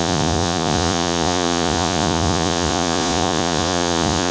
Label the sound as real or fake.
fake